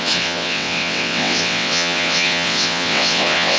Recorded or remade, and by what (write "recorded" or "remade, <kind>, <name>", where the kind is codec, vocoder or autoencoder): remade, vocoder, WaveNeXt